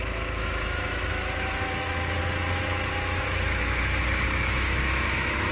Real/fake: fake